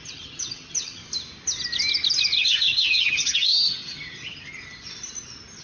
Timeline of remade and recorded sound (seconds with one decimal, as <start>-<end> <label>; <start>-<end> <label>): 0.0-1.0 remade; 1.0-2.4 recorded; 2.4-4.6 remade; 4.6-5.6 recorded